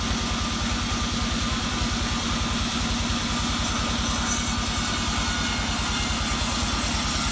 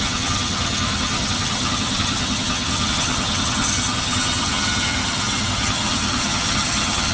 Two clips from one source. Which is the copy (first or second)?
second